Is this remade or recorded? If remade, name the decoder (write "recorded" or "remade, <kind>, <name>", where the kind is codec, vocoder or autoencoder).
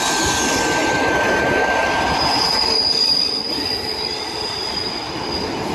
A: recorded